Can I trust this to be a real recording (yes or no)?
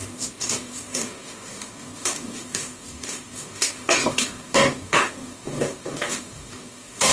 no